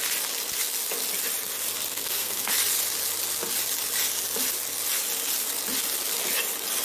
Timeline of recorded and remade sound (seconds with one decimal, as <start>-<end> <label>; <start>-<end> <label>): 0.0-1.9 recorded; 1.9-2.5 remade; 2.5-6.8 recorded